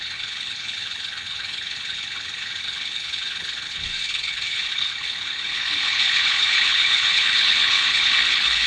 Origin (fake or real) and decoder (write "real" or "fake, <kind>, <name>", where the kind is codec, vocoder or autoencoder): fake, codec, HILCodec